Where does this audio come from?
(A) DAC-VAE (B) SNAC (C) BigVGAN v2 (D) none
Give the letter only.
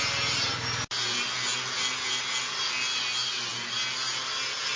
D